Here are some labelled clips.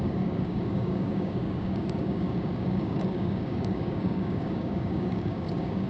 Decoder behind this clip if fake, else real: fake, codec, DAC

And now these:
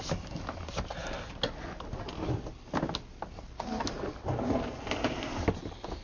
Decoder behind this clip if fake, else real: real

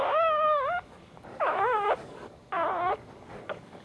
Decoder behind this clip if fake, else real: fake, codec, DAC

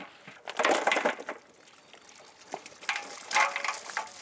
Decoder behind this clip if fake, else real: real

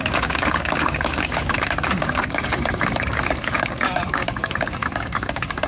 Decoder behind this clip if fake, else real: fake, codec, DAC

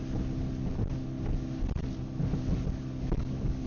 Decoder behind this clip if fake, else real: real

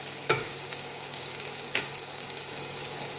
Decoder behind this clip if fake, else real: fake, codec, DAC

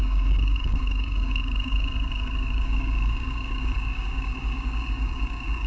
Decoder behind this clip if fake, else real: fake, codec, DAC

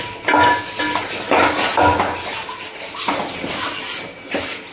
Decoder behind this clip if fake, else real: real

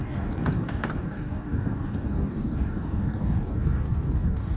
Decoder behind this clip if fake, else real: fake, codec, DAC